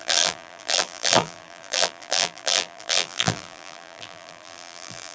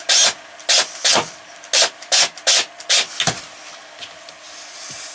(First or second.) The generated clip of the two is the first